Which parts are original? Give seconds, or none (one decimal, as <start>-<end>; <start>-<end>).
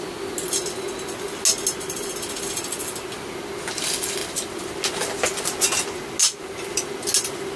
0.0-7.6